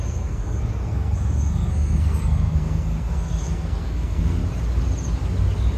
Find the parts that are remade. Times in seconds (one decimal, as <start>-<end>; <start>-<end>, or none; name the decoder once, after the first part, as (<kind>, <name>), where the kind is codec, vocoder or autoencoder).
0.0-4.4 (codec, SNAC)